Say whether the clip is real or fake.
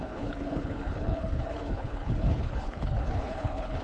fake